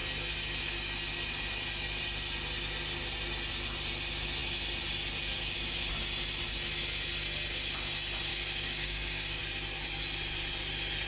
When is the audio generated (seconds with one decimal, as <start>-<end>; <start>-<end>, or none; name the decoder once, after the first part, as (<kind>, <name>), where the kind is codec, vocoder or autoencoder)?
8.3-9.4 (codec, DAC)